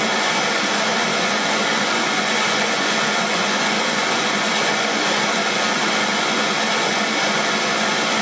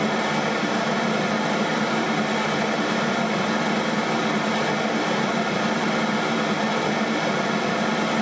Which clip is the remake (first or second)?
first